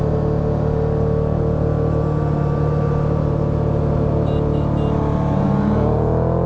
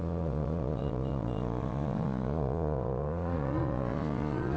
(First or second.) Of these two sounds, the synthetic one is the second